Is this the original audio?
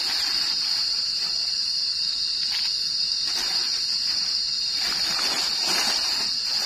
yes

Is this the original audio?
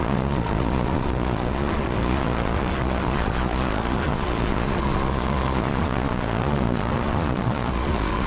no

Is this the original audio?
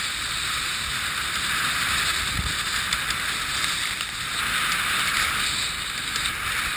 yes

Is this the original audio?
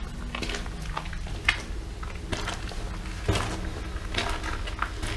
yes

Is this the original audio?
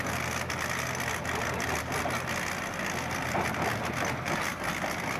yes